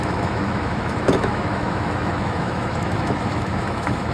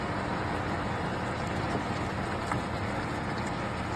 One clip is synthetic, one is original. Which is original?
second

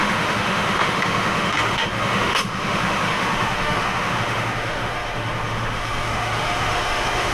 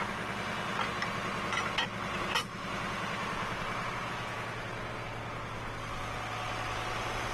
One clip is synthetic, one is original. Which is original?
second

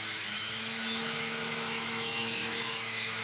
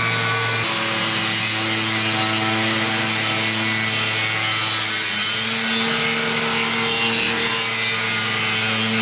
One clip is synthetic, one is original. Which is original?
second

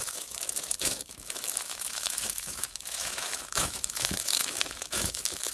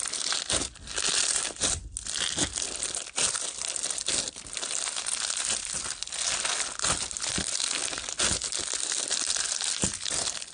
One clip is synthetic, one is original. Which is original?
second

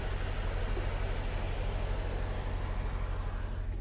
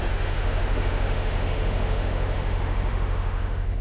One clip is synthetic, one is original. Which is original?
first